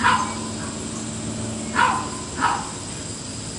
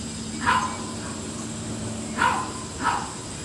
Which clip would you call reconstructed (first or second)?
second